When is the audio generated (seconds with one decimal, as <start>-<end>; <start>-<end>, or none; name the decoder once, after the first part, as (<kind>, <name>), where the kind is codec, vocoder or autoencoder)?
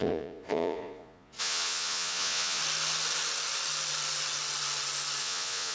0.0-2.6 (vocoder, Vocos); 5.2-5.7